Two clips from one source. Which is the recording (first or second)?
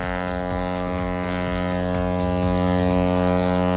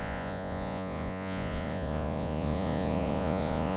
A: first